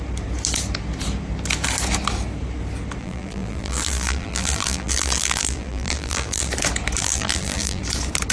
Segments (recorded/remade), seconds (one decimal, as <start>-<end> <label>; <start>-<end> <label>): 0.0-3.0 recorded; 3.0-6.5 remade; 6.5-7.0 recorded; 7.0-7.8 remade; 7.8-8.3 recorded